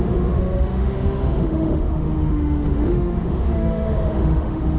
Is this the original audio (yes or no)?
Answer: no